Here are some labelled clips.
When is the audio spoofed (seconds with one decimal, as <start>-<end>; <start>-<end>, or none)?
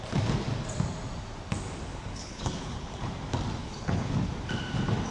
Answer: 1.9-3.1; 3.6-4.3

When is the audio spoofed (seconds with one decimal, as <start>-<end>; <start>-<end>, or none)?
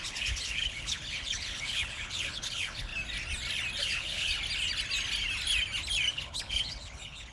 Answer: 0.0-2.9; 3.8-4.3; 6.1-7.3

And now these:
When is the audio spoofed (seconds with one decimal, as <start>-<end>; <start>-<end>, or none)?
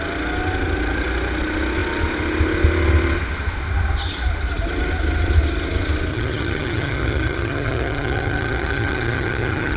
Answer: 6.1-9.8